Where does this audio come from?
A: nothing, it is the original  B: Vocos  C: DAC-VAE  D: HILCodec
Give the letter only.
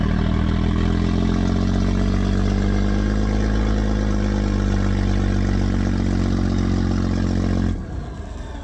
A